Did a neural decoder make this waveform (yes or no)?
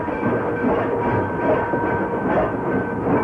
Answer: no